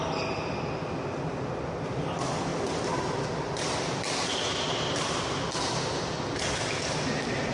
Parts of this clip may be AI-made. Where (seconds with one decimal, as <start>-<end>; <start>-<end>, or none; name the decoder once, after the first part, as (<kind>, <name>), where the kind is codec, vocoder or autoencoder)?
none